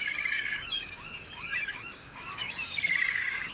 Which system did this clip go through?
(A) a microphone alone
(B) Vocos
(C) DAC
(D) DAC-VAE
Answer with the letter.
C